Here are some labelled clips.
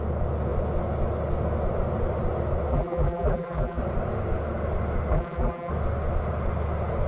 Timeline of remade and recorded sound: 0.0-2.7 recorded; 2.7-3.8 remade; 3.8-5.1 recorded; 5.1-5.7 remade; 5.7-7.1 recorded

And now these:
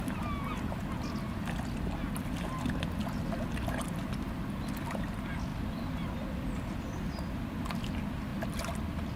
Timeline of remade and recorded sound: 0.0-8.3 recorded; 8.3-9.2 remade

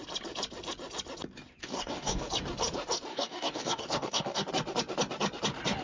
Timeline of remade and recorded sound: 0.0-1.6 recorded; 1.6-2.3 remade; 2.3-3.1 recorded; 3.1-4.5 remade; 4.5-5.8 recorded

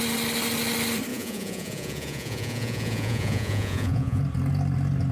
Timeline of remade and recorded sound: 0.0-1.1 recorded; 1.1-4.2 remade; 4.2-5.1 recorded